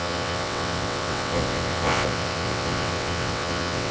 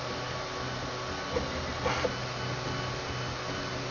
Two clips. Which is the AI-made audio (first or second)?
first